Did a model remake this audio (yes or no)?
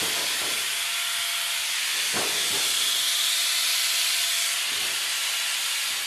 no